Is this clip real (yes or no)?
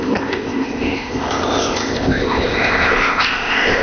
no